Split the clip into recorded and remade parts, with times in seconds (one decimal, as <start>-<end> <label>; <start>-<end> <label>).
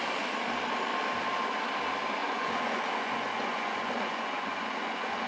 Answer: 0.0-2.2 recorded; 2.2-5.3 remade